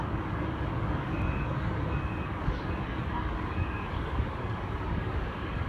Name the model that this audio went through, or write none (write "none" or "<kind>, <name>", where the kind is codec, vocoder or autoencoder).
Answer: codec, DAC